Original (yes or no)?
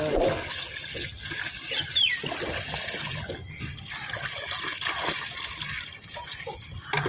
yes